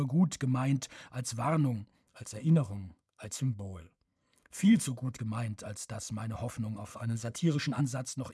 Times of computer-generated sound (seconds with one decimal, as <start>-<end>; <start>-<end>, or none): 1.9-5.2; 6.9-7.8